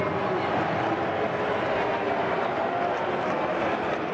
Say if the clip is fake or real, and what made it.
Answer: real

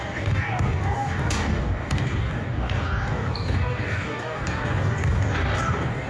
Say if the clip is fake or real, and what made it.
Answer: fake, codec, DAC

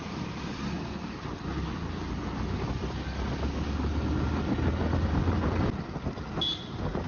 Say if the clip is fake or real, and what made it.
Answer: real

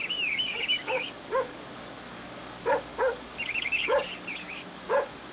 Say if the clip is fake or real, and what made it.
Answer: fake, codec, DAC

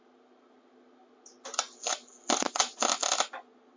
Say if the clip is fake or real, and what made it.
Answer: real